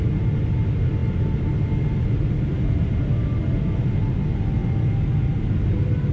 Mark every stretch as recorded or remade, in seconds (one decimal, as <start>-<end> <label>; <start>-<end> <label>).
0.0-6.1 recorded